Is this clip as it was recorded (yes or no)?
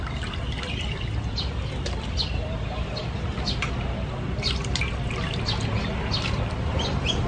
yes